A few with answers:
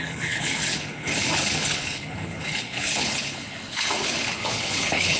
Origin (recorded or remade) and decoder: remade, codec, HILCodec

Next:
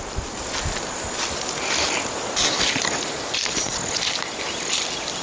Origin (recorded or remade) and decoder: recorded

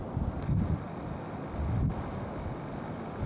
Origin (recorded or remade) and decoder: recorded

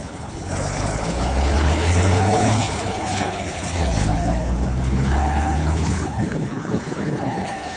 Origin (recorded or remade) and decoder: remade, codec, HILCodec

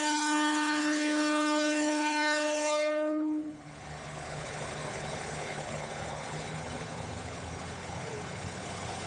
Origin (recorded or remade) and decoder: remade, codec, HILCodec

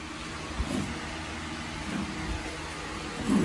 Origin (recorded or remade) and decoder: recorded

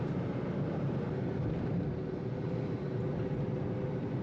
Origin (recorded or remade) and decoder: recorded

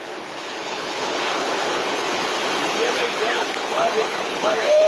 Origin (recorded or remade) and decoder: remade, codec, HILCodec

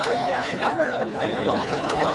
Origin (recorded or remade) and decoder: remade, codec, HILCodec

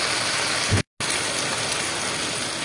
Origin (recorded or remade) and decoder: recorded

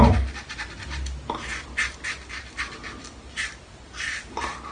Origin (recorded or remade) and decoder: recorded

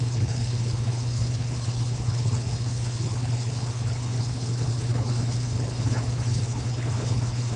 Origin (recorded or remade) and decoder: remade, codec, HILCodec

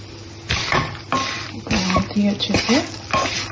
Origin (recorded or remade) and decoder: recorded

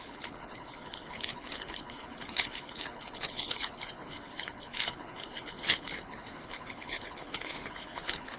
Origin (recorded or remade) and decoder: remade, codec, HILCodec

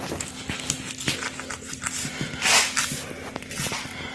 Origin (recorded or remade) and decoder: recorded